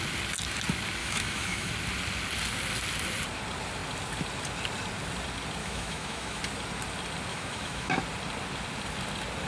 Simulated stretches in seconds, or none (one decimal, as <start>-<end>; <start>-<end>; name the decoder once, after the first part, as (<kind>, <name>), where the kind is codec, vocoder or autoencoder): 1.0-1.7 (autoencoder, DAC-VAE); 5.6-6.4; 7.3-8.0